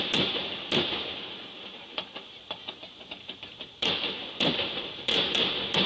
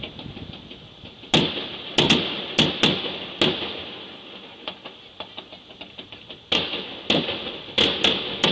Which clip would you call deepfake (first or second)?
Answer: first